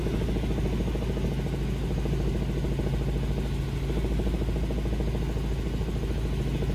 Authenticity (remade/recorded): recorded